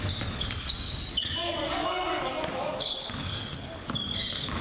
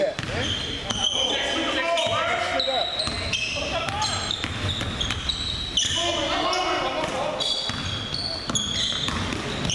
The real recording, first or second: second